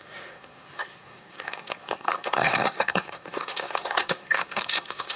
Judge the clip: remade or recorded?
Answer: remade